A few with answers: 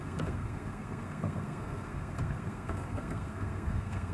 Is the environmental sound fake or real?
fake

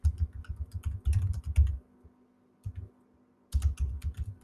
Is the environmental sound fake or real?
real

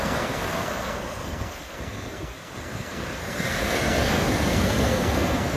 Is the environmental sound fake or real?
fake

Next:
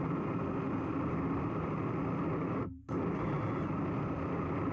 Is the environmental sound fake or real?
real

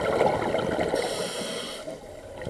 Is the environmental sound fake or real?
real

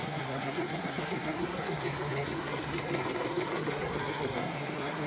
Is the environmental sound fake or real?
fake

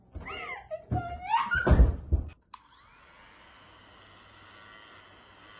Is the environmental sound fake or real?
real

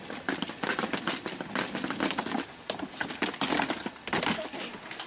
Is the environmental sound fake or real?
real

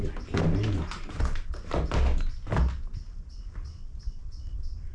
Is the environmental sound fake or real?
real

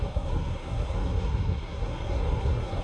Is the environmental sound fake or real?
fake